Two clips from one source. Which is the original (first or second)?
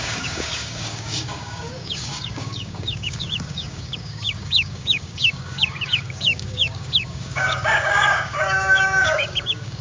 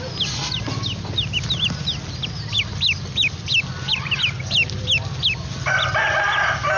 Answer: second